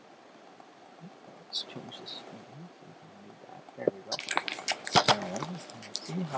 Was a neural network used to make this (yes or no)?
no